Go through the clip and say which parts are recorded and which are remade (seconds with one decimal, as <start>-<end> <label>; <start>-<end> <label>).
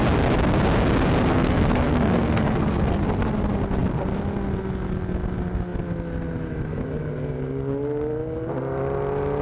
0.0-1.3 recorded; 1.3-3.0 remade; 3.0-9.4 recorded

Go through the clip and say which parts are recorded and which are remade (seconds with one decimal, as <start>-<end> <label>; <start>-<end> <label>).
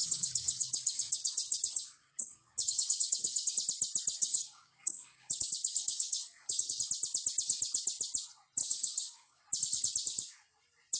0.0-3.5 remade; 3.5-4.2 recorded; 4.2-6.8 remade; 6.8-8.6 recorded; 8.6-9.4 remade; 9.4-11.0 recorded